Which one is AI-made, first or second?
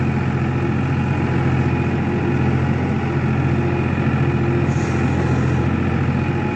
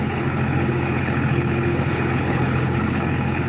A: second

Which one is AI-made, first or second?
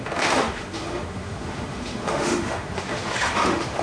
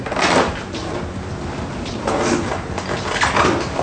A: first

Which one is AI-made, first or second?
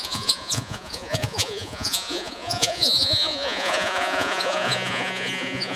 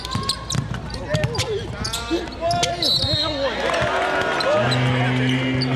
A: first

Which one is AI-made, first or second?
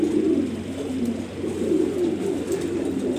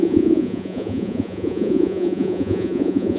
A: second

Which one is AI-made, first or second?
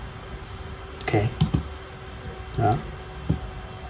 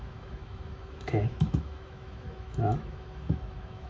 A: second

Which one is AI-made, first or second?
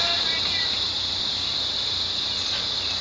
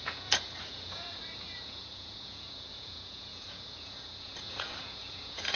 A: second